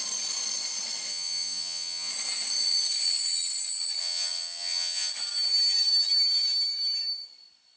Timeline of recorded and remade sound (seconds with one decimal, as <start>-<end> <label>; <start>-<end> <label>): 0.0-1.1 recorded; 1.1-2.1 remade; 2.1-4.0 recorded; 4.0-5.1 remade; 5.1-7.8 recorded